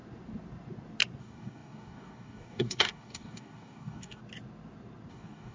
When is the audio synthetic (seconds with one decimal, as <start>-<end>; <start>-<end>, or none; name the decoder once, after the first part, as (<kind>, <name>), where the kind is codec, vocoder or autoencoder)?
1.2-4.2 (codec, DAC); 5.1-5.5